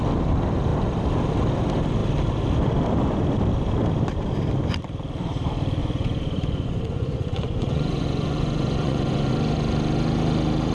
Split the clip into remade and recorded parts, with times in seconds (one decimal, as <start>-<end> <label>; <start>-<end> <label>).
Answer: 0.0-5.8 recorded; 5.8-9.3 remade; 9.3-10.7 recorded